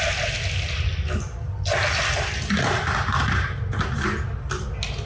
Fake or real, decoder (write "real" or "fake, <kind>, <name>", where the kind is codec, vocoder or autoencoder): real